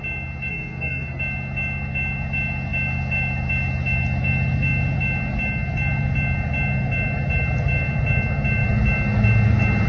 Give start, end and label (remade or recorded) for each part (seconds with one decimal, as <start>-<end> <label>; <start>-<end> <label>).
0.0-0.5 recorded; 0.5-1.2 remade; 1.2-9.9 recorded